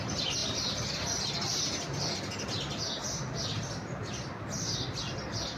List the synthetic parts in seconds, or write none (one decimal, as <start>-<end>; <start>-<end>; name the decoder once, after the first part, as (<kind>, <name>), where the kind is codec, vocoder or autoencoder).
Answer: none